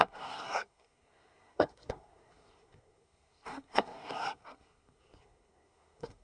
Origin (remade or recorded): remade